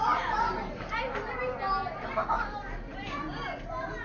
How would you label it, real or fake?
real